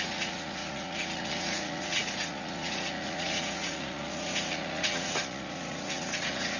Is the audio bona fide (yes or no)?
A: no